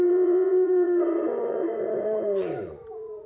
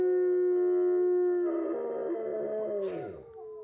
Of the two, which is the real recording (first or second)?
second